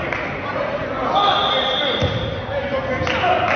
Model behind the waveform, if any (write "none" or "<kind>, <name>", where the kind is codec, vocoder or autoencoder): none